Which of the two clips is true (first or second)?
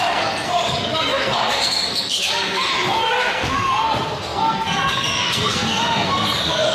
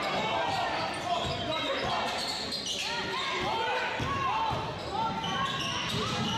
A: second